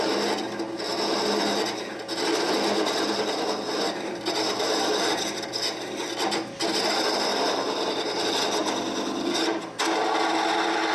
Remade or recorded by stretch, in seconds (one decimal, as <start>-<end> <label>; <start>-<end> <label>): 0.0-7.3 recorded; 7.3-8.3 remade; 8.3-10.9 recorded